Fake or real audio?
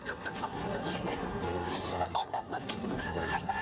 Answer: fake